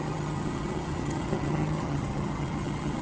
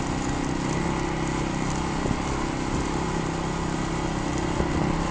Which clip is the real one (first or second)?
second